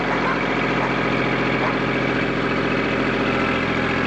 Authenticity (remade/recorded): recorded